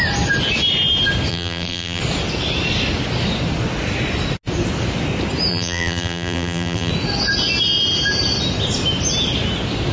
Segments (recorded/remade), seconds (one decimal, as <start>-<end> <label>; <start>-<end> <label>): 0.0-1.3 recorded; 1.3-2.0 remade; 2.0-5.5 recorded; 5.5-6.9 remade; 6.9-9.9 recorded